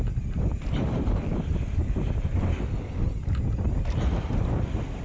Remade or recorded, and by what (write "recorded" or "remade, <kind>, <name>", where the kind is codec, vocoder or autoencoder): recorded